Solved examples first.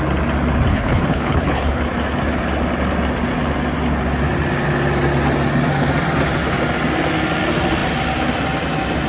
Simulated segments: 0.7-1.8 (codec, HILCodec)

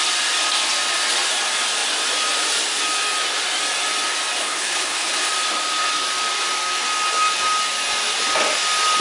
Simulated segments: 4.4-5.3 (codec, HILCodec)

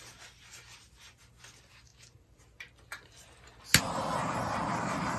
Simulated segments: none

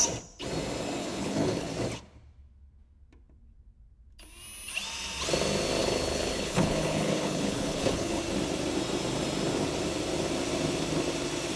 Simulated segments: 1.0-1.7 (codec, HILCodec); 5.8-8.2

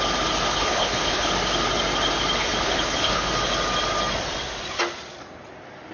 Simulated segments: 0.5-1.3 (codec, HILCodec); 2.4-3.3

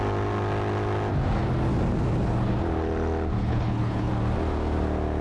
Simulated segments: 3.4-4.1 (codec, HILCodec)

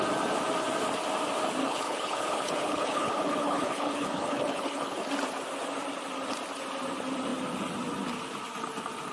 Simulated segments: 1.6-5.1 (codec, HILCodec)

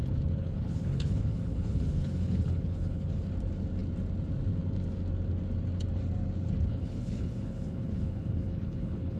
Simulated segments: 0.4-3.2 (codec, HILCodec); 6.7-9.2